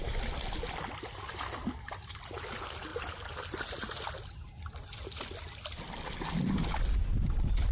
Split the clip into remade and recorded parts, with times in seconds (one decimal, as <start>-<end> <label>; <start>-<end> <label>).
0.0-7.7 recorded